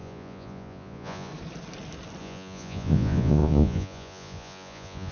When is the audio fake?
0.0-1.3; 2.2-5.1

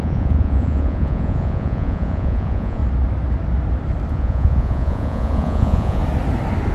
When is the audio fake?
0.0-2.8; 4.1-6.0

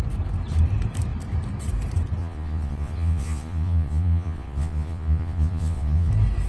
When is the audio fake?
2.2-6.1

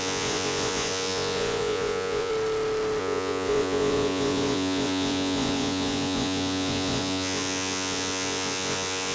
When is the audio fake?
0.0-2.3; 3.0-9.1

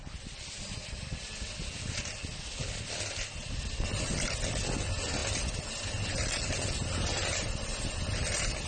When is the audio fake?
none

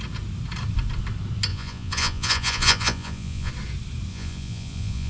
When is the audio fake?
1.5-3.5; 4.1-5.1